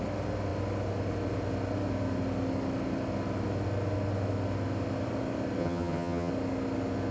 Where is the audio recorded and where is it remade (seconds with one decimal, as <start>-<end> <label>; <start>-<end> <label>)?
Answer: 0.0-5.6 recorded; 5.6-6.3 remade; 6.3-7.1 recorded